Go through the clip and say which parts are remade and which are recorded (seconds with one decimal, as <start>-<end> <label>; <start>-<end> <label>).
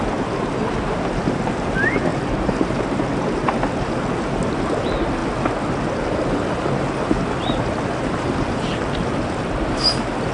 0.0-2.1 recorded; 2.1-2.8 remade; 2.8-10.3 recorded